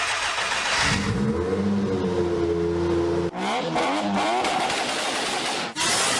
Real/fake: real